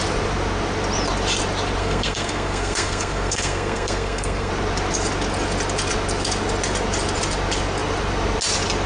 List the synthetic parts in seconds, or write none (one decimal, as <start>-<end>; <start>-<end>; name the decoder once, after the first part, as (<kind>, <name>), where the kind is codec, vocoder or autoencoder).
1.8-4.5 (codec, SNAC)